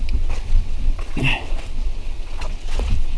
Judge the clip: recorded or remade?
remade